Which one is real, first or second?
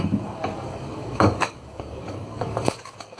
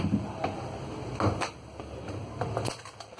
second